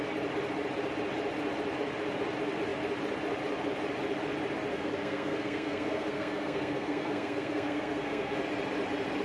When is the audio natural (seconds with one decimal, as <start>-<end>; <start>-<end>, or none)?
0.0-4.7; 8.4-9.2